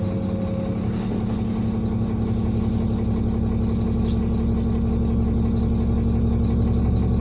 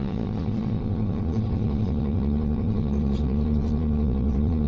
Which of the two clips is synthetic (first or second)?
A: second